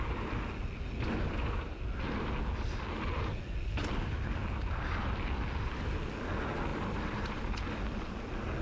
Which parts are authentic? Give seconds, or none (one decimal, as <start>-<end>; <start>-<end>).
0.0-6.7; 7.4-8.6